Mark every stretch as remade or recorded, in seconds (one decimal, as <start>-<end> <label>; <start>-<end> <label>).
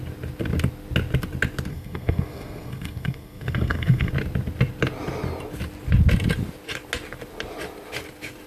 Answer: 0.0-1.7 recorded; 1.7-4.1 remade; 4.1-8.5 recorded